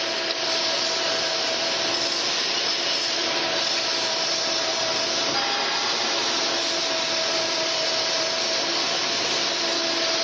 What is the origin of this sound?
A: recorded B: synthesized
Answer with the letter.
A